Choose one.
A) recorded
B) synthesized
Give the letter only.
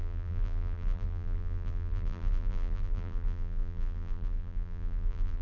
B